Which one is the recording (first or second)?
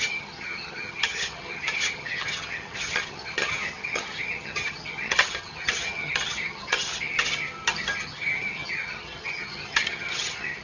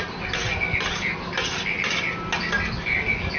second